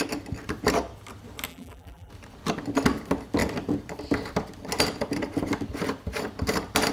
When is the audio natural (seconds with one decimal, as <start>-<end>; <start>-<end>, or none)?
0.0-1.5; 2.1-6.9